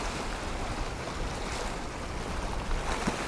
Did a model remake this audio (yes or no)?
no